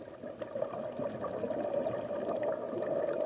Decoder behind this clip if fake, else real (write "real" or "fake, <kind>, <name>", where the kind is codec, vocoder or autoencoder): real